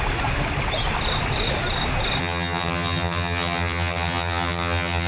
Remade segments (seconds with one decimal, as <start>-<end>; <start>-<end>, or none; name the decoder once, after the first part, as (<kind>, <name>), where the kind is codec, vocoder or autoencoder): 2.2-5.1 (vocoder, HiFi-GAN)